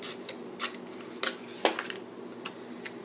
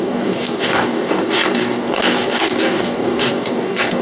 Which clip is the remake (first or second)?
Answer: second